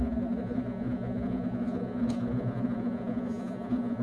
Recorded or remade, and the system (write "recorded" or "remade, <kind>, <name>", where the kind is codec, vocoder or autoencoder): remade, vocoder, Vocos